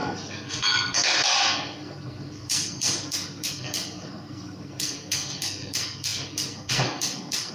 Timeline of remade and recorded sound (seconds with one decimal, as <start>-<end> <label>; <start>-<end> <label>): 0.0-7.5 remade